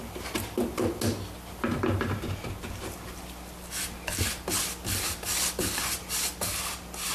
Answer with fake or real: real